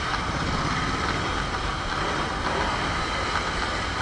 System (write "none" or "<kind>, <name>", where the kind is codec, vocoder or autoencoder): none